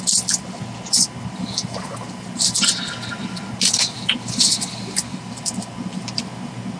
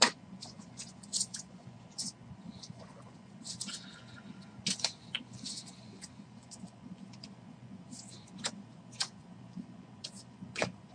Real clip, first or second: first